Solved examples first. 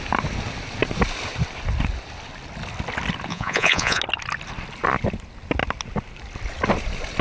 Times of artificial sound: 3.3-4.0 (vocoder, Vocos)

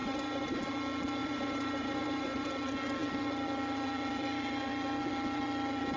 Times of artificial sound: 0.0-0.6 (vocoder, BigVGAN v2); 1.2-2.5

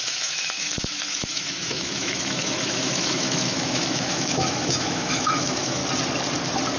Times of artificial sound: 0.0-5.8 (autoencoder, DAC-VAE)

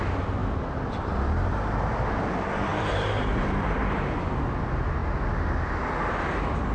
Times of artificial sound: 2.7-4.0 (vocoder, BigVGAN v2)

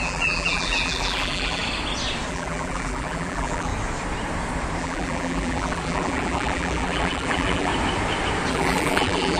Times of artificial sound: 0.0-1.6 (vocoder, BigVGAN v2); 2.3-3.7; 4.8-7.7; 8.5-9.4

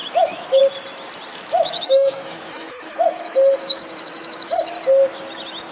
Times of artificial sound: 0.0-0.6 (autoencoder, DAC-VAE); 1.3-4.7